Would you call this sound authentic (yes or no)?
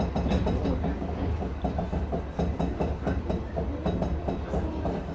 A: yes